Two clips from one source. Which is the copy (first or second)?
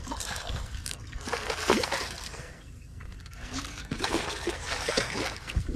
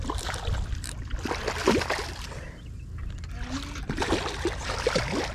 first